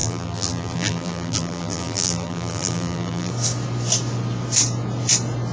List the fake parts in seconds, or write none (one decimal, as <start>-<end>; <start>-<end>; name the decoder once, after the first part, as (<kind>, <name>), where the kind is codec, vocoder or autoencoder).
0.0-3.3 (vocoder, BigVGAN v2)